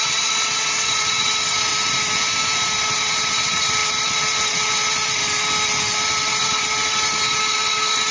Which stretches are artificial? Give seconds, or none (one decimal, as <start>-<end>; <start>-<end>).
0.0-1.7; 2.8-5.2; 6.2-8.1